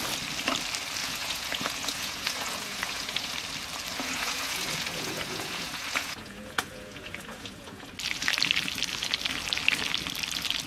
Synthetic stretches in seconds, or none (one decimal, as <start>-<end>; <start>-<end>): 1.0-3.3; 3.9-7.9